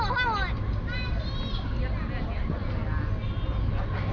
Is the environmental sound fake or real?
real